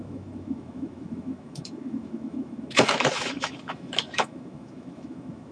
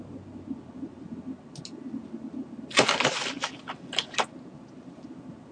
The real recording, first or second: second